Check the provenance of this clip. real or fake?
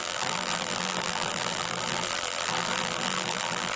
fake